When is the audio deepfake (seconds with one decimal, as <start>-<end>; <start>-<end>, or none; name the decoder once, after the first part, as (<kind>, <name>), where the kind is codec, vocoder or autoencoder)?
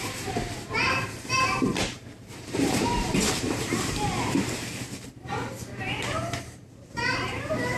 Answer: 0.0-7.8 (vocoder, BigVGAN v2)